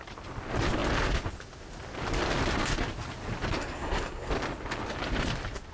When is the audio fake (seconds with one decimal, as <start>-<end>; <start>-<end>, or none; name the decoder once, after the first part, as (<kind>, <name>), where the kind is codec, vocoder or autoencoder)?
3.6-4.3 (codec, SNAC)